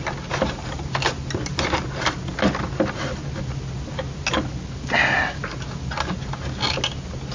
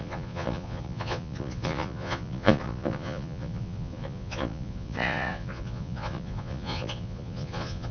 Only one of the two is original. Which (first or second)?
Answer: first